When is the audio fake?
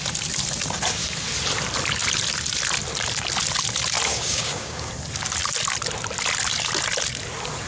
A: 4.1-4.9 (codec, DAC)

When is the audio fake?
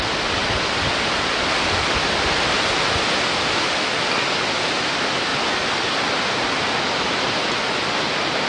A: none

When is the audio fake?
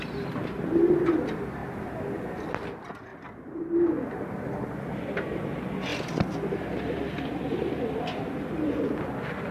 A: 0.0-1.6 (vocoder, BigVGAN v2); 2.4-3.1; 4.1-5.9; 7.4-9.5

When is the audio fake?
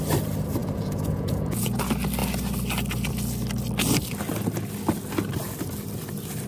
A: 0.6-1.8 (vocoder, Vocos)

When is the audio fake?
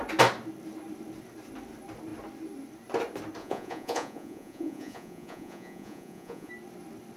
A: 3.4-6.5 (vocoder, Vocos)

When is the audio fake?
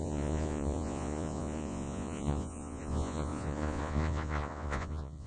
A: 0.0-5.3 (vocoder, Vocos)